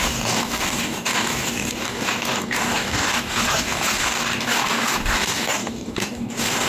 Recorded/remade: remade